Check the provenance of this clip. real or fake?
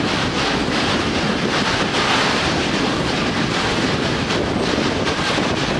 real